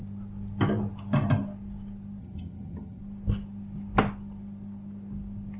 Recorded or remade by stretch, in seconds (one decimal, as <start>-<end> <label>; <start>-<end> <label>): 0.0-2.2 recorded; 2.2-3.0 remade; 3.0-5.6 recorded